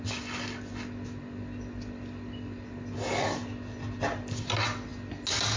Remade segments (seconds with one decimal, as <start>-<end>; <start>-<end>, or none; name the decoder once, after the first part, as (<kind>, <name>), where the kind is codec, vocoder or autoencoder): none